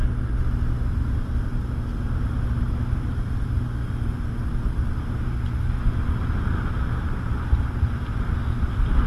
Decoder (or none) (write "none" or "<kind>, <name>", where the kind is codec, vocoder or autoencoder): none